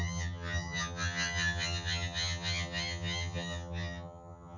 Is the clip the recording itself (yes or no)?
no